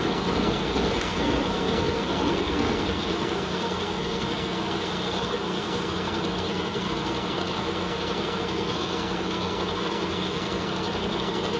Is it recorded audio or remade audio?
remade